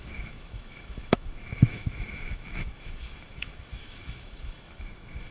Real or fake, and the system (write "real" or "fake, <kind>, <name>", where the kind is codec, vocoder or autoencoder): fake, autoencoder, DAC-VAE